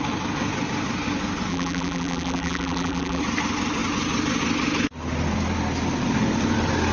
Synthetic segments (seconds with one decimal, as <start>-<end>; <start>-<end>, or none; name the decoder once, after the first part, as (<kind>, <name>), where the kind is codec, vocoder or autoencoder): 1.5-3.2 (vocoder, BigVGAN v2)